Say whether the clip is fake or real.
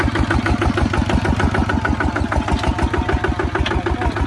real